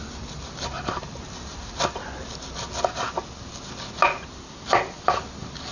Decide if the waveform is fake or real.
real